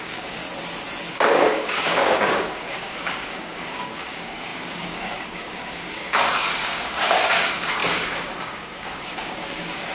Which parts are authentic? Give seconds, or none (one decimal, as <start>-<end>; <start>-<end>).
0.4-1.1